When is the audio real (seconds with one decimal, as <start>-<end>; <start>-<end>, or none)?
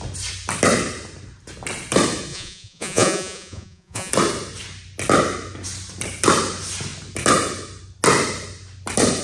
0.0-2.3; 4.1-9.2